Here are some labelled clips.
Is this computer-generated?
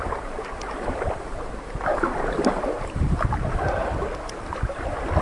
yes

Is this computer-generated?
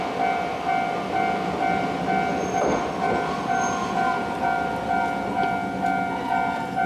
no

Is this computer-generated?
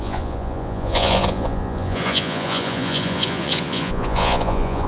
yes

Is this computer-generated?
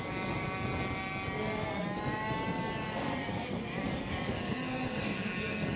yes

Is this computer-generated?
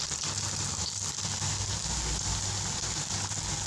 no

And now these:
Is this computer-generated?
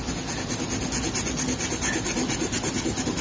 no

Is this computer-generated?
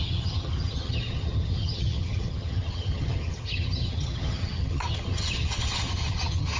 yes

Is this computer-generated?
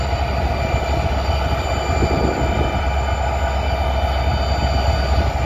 no